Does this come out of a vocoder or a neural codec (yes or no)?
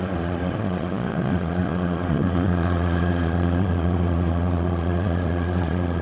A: yes